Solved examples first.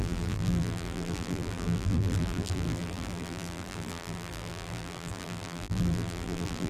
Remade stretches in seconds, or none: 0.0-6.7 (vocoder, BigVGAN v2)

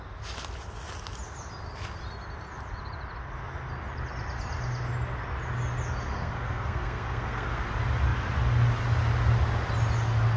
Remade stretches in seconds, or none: 6.1-7.7 (codec, SNAC)

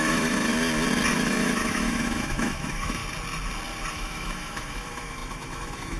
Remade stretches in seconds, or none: 0.0-0.5 (autoencoder, DAC-VAE); 1.1-3.0; 3.9-6.0

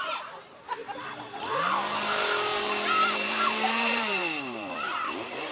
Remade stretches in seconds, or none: 0.0-0.8 (vocoder, BigVGAN v2); 2.6-5.5

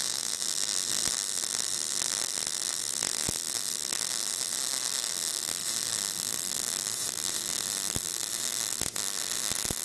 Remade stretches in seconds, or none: 5.6-8.0 (vocoder, BigVGAN v2)